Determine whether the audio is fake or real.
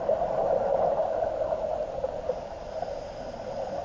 real